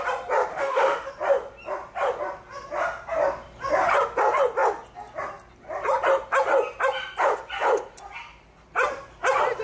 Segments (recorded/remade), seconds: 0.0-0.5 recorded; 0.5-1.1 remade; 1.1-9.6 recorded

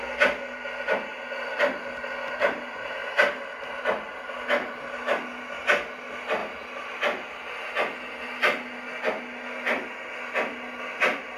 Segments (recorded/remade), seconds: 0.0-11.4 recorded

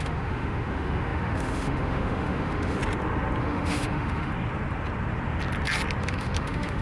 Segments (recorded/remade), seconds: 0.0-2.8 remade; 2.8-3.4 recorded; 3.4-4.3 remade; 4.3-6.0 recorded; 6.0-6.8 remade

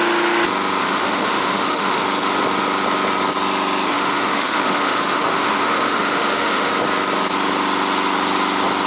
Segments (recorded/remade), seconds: 0.0-0.8 recorded; 0.8-2.0 remade; 2.0-3.9 recorded; 3.9-6.7 remade; 6.7-8.9 recorded

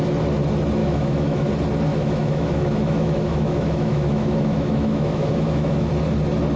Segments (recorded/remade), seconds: 0.0-0.8 recorded; 0.8-1.5 remade; 1.5-1.9 recorded; 1.9-5.9 remade; 5.9-6.6 recorded

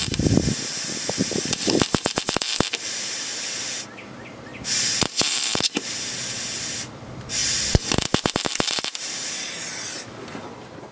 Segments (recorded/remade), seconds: 0.0-10.9 recorded

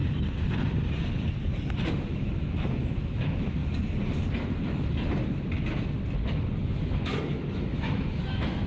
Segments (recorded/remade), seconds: 0.0-1.9 recorded; 1.9-3.6 remade; 3.6-4.3 recorded; 4.3-5.2 remade; 5.2-6.6 recorded; 6.6-8.7 remade

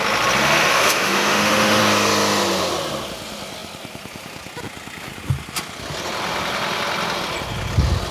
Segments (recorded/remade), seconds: 0.0-0.7 recorded; 0.7-1.8 remade; 1.8-8.1 recorded